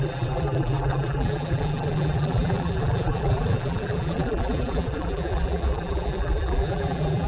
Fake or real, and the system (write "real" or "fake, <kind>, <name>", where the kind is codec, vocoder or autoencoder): fake, vocoder, BigVGAN v2